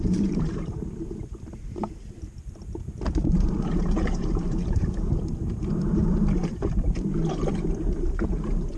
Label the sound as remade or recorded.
remade